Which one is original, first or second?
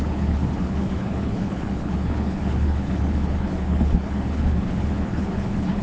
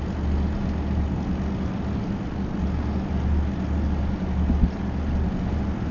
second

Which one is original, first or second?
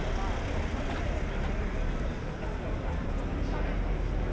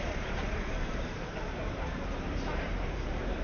first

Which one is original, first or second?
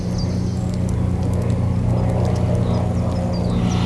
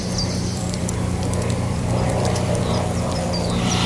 first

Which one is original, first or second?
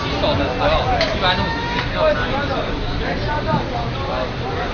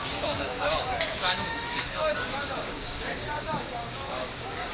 first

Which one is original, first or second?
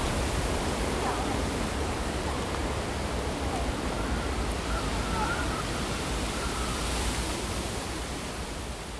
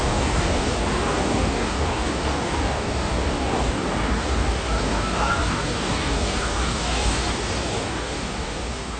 first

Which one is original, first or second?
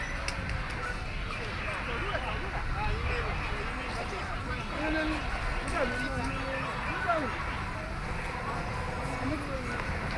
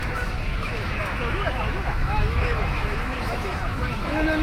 first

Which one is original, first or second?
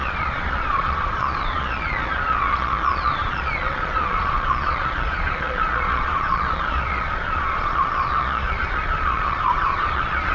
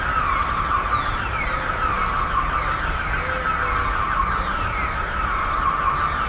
second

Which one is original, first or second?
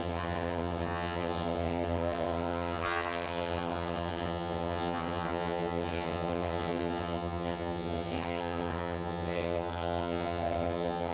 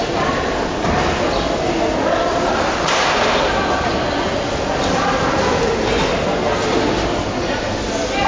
second